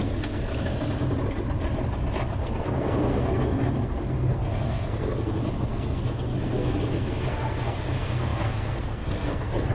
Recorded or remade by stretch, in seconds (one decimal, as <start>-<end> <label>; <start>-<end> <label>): 0.0-0.5 remade; 0.5-2.4 recorded; 2.4-9.7 remade